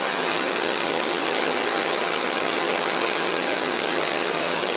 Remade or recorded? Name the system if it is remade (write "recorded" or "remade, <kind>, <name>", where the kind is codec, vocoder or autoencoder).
remade, vocoder, HiFi-GAN